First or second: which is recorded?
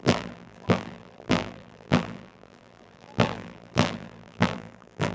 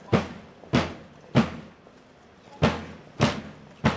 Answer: second